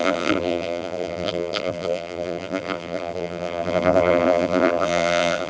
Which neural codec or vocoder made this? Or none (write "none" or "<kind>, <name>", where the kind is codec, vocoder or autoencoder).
vocoder, BigVGAN v2